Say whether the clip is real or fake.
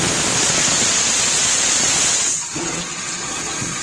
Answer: fake